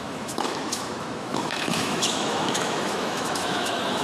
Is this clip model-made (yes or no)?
yes